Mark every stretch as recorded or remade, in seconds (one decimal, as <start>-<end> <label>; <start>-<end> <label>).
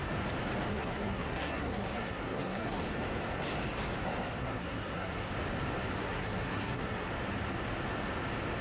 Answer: 0.0-0.7 recorded; 0.7-2.8 remade; 2.8-4.4 recorded; 4.4-5.3 remade; 5.3-6.0 recorded; 6.0-7.1 remade; 7.1-8.6 recorded